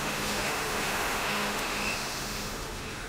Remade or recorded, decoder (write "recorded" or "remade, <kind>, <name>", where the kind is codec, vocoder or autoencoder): remade, autoencoder, DAC-VAE